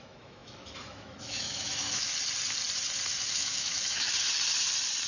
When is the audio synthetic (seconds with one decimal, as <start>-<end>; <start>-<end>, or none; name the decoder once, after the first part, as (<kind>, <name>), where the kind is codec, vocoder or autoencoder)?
0.0-2.1 (autoencoder, DAC-VAE); 3.3-4.1